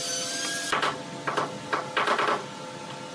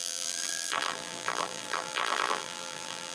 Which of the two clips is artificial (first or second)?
second